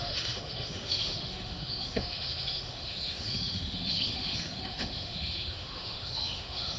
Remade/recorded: remade